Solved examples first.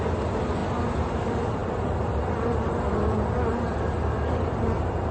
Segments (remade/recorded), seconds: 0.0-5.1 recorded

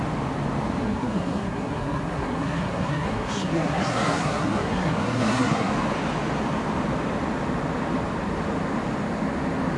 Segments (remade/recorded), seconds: 0.0-0.8 recorded; 0.8-5.7 remade; 5.7-9.8 recorded

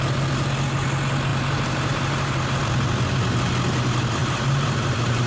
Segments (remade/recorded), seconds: 0.0-1.3 recorded; 1.3-2.6 remade; 2.6-4.2 recorded; 4.2-5.3 remade

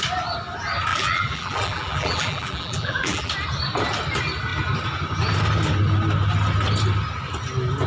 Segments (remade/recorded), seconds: 0.0-0.9 recorded; 0.9-3.3 remade; 3.3-7.9 recorded

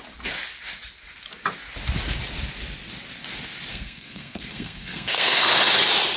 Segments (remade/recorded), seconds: 0.0-3.7 recorded; 3.7-5.5 remade; 5.5-6.2 recorded

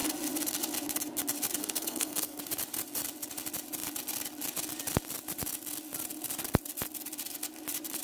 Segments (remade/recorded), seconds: 0.0-1.6 recorded; 1.6-2.4 remade; 2.4-8.0 recorded

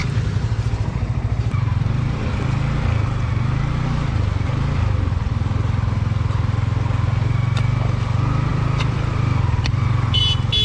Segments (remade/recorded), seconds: 0.0-2.2 remade; 2.2-8.5 recorded; 8.5-10.2 remade; 10.2-10.6 recorded